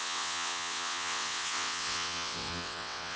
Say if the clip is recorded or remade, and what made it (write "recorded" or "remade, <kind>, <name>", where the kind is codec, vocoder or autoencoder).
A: remade, vocoder, WaveNeXt